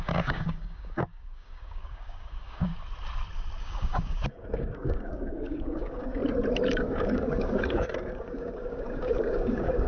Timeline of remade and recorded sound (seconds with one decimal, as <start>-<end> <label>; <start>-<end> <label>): 0.0-2.7 remade; 2.7-3.6 recorded; 3.6-6.2 remade; 6.2-6.7 recorded; 6.7-9.9 remade